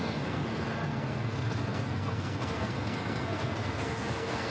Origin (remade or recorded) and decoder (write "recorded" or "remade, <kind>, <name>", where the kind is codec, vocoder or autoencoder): remade, codec, SNAC